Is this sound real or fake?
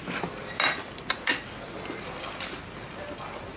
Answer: real